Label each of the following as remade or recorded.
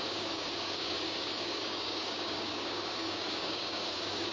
remade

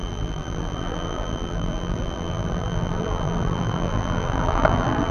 remade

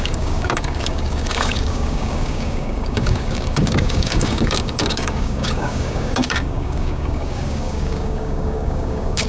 remade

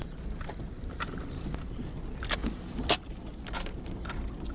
recorded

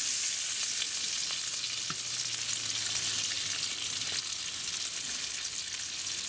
recorded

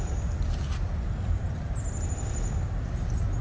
remade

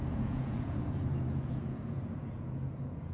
remade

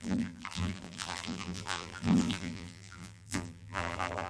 remade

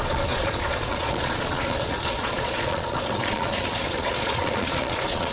remade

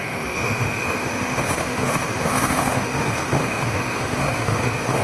remade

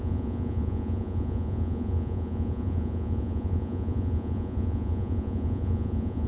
remade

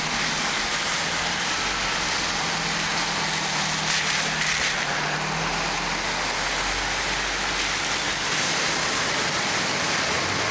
recorded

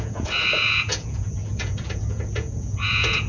remade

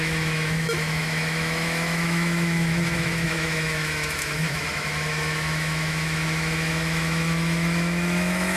remade